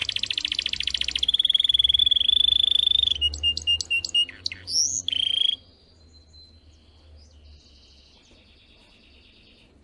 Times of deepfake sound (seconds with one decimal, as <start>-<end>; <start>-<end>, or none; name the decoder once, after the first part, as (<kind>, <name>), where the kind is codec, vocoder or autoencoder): none